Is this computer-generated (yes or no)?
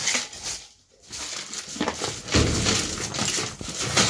no